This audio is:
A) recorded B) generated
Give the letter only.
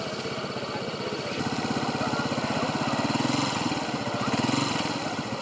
A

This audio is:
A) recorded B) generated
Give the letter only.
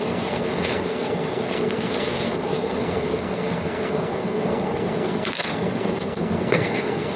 B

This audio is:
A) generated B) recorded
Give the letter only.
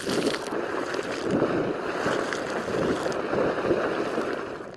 B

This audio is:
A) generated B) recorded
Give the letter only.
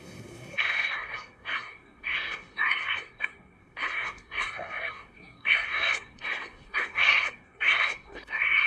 A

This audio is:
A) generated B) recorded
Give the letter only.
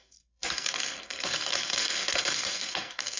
A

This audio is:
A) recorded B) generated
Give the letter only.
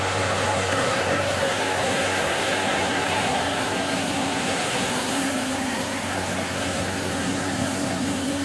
B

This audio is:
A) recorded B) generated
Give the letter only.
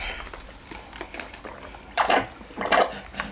A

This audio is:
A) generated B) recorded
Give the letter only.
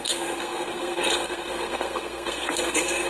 A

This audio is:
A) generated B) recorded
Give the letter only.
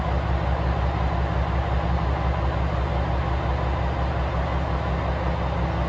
B